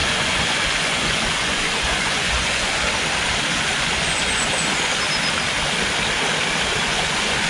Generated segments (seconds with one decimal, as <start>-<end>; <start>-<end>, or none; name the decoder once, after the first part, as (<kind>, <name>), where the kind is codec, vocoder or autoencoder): 0.0-2.8 (vocoder, Vocos); 3.5-4.9; 6.8-7.5